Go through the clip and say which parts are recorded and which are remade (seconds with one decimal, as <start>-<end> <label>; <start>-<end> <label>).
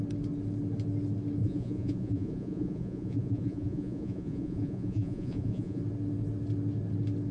0.0-1.4 recorded; 1.4-5.8 remade; 5.8-7.3 recorded